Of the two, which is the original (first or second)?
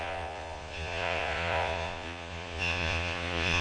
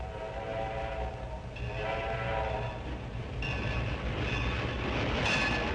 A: second